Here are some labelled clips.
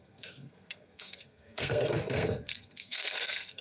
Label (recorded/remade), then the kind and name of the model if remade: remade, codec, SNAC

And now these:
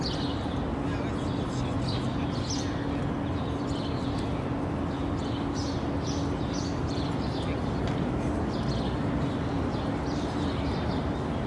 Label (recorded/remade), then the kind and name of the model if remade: recorded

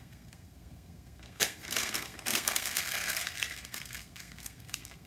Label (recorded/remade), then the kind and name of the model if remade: remade, codec, SNAC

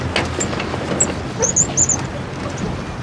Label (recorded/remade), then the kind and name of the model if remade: recorded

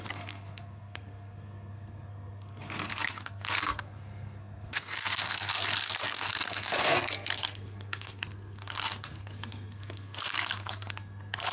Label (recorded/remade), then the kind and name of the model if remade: remade, codec, SNAC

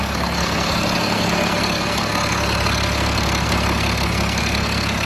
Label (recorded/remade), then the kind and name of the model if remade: remade, codec, SNAC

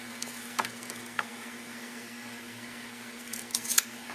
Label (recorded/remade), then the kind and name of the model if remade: remade, codec, SNAC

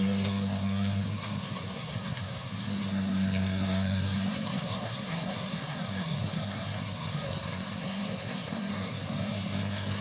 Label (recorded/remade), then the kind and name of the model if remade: remade, codec, SNAC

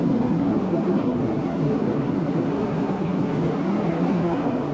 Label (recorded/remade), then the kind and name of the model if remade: remade, codec, SNAC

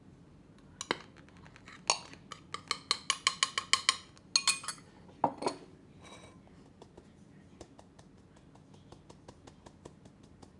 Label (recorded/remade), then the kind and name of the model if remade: recorded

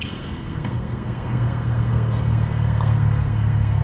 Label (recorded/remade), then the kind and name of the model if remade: remade, codec, SNAC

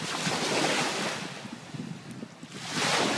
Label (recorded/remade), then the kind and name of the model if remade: recorded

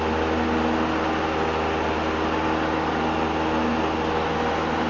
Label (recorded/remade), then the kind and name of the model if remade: recorded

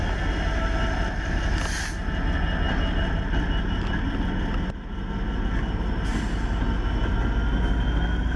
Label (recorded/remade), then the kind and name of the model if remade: recorded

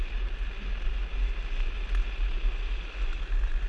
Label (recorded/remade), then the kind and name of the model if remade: recorded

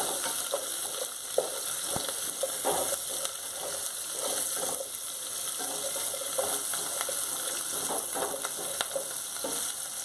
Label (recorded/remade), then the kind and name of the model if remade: recorded